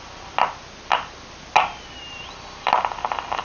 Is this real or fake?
real